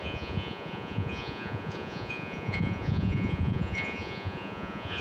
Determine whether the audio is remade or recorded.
remade